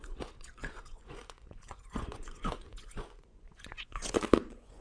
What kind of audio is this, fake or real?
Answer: fake